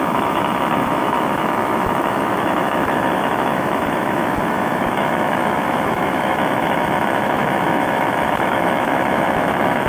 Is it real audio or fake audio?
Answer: fake